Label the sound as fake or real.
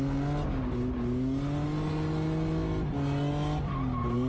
real